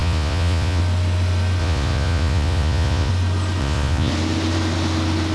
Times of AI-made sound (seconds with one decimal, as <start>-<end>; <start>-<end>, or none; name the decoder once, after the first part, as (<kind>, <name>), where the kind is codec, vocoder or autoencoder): 0.0-0.8 (vocoder, Vocos); 1.6-3.1; 3.6-4.1